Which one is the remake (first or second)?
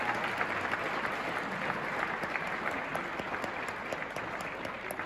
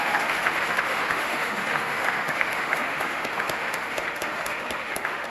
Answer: second